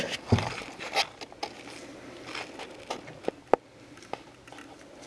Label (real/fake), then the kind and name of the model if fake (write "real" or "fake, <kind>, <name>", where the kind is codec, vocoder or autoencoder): real